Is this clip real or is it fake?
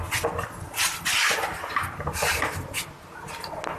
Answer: real